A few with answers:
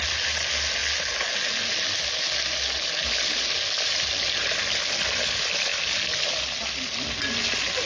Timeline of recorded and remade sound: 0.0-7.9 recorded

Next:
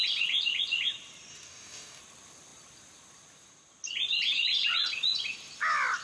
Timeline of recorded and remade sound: 0.0-1.3 recorded; 1.3-2.0 remade; 2.0-6.0 recorded

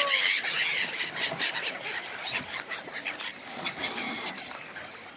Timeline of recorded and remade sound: 0.0-3.3 remade; 3.3-4.2 recorded; 4.2-5.2 remade